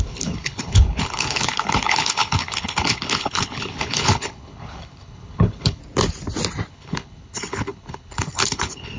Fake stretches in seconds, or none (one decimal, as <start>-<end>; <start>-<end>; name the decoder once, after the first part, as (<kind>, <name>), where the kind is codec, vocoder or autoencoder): 0.0-5.8 (codec, HILCodec); 6.7-9.0